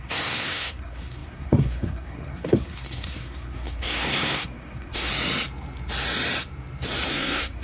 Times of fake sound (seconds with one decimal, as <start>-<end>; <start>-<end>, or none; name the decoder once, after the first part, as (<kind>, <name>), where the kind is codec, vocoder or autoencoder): 0.0-5.1 (codec, SNAC); 7.1-7.6